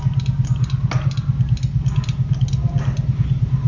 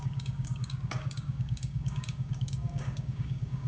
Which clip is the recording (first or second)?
first